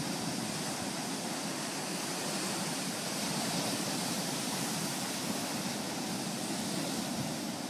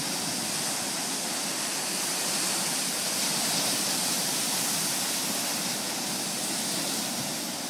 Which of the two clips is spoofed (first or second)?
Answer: first